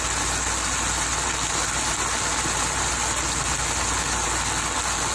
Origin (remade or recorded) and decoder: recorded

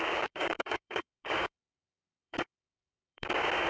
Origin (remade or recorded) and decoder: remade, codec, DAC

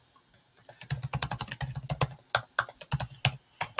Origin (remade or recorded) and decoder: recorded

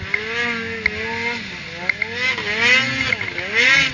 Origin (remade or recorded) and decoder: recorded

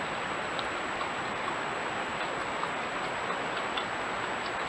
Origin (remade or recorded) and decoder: recorded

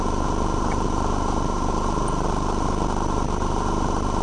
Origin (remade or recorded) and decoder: recorded